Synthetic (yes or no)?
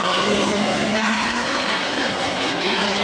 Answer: yes